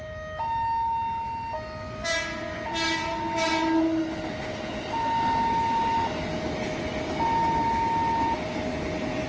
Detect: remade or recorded recorded